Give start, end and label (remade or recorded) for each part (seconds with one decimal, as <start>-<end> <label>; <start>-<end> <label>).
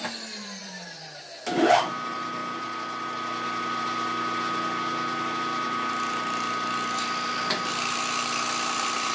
0.0-0.6 recorded; 0.6-1.2 remade; 1.2-9.1 recorded